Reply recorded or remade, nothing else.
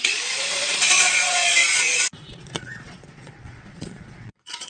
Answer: remade